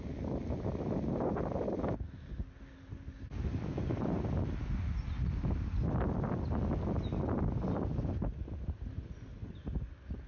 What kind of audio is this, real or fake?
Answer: real